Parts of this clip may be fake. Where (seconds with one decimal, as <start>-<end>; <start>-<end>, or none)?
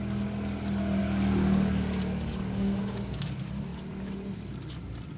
1.0-2.8